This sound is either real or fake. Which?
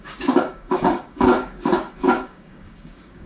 fake